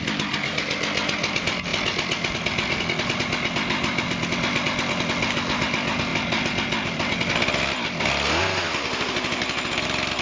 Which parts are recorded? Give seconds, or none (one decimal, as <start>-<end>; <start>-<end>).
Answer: 0.0-10.2